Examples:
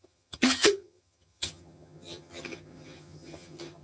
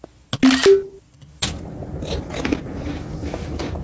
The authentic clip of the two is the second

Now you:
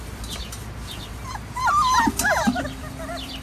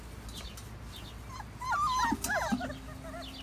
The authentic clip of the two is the second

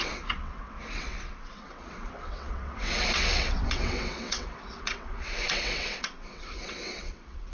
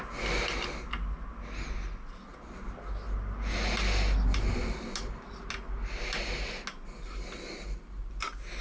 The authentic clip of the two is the second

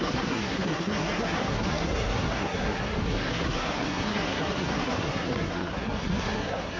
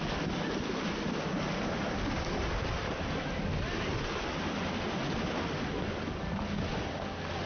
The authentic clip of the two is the second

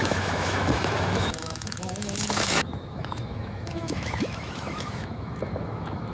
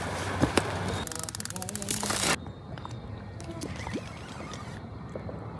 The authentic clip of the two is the second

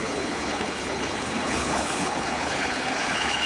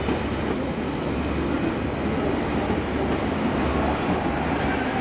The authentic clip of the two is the second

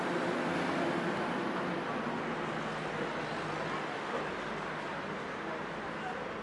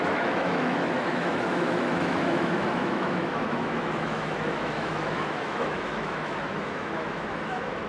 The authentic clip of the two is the first